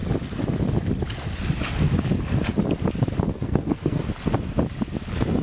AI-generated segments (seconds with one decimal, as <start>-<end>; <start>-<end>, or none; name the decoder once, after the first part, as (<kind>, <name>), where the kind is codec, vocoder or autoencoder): 3.2-4.0 (codec, SNAC)